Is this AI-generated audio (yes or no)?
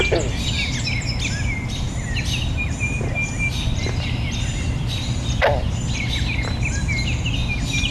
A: no